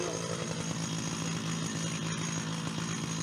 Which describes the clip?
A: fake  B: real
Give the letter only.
B